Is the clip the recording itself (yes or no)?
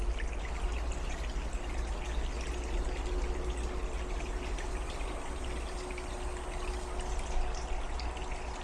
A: yes